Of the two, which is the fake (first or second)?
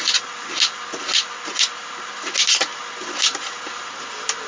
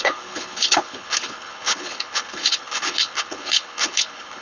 second